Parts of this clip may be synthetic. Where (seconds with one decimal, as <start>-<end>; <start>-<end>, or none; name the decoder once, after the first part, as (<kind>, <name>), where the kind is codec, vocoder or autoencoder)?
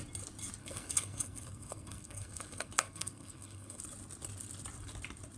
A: 0.6-3.8 (codec, SNAC)